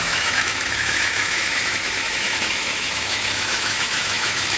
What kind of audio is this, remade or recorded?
remade